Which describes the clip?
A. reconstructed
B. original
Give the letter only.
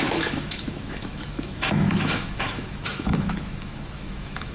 A